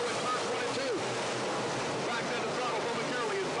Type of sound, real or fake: real